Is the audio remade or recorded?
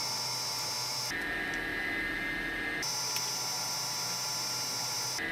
recorded